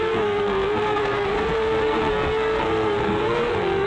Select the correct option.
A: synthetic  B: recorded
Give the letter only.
A